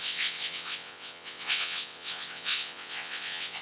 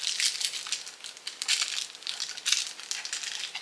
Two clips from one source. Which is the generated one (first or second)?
first